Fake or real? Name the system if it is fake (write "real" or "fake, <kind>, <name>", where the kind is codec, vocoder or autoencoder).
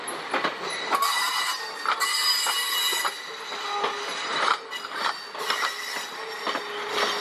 real